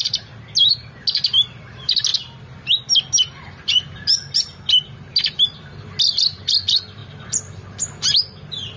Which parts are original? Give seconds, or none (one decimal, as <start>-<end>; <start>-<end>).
0.0-8.8

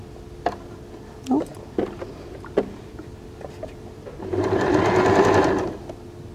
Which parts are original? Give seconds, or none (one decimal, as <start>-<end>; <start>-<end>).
0.0-1.5; 4.3-6.3

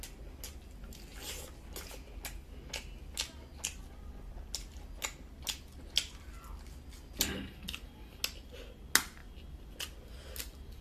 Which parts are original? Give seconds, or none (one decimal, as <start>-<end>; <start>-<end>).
0.0-10.8

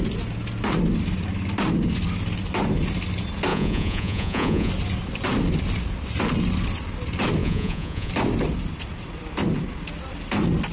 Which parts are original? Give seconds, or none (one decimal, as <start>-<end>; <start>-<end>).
0.0-3.5; 4.7-7.4; 8.1-10.7

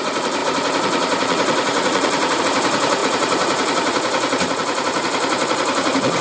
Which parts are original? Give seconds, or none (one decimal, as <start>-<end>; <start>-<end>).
none

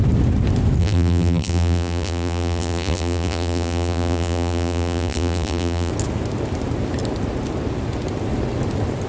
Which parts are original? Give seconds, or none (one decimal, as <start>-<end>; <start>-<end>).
0.0-0.8; 5.9-9.1

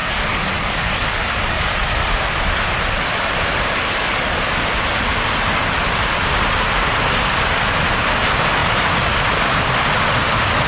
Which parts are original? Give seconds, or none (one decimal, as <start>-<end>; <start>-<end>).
1.7-10.7

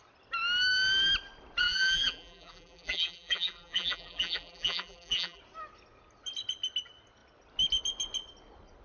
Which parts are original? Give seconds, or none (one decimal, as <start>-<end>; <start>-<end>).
0.0-1.6; 5.4-8.8